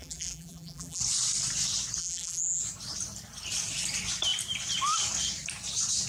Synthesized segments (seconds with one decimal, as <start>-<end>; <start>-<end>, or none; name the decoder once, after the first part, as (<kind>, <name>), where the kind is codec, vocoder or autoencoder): 0.0-1.0 (vocoder, BigVGAN v2); 2.0-2.6